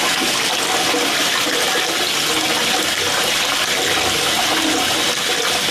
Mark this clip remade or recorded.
recorded